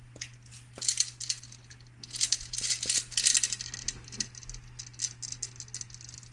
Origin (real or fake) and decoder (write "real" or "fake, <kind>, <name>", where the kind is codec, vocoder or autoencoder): real